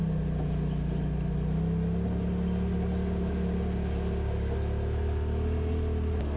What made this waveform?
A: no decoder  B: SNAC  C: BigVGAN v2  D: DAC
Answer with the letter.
A